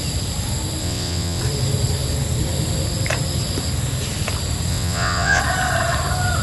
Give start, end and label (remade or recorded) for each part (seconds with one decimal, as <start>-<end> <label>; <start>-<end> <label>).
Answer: 0.0-0.8 recorded; 0.8-1.4 remade; 1.4-4.7 recorded; 4.7-5.4 remade; 5.4-6.4 recorded